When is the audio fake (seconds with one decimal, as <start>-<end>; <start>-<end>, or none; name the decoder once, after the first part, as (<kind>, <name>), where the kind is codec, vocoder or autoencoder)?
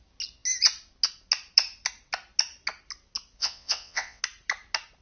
3.4-4.2 (vocoder, WaveNeXt)